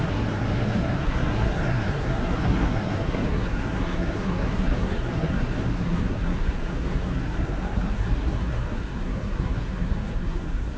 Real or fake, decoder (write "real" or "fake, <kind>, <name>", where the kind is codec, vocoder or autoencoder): fake, codec, SNAC